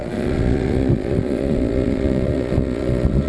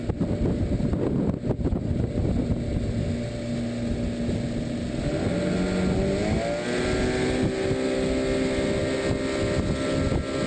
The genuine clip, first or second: second